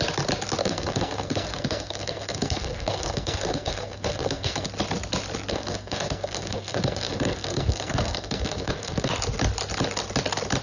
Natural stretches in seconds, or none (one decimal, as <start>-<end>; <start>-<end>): 0.0-0.6; 4.7-5.5; 9.1-10.6